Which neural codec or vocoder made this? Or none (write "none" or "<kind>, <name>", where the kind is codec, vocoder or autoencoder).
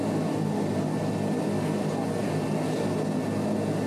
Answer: none